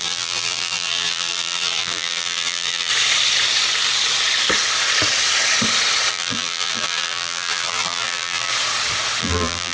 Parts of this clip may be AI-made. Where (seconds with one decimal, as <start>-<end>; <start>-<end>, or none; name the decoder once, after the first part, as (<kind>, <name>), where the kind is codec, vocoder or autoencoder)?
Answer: 0.0-2.9 (vocoder, BigVGAN v2); 6.1-8.5; 9.2-9.7